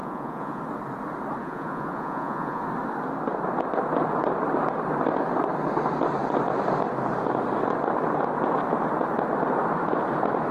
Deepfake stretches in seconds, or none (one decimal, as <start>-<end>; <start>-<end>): 0.0-0.6; 1.4-2.6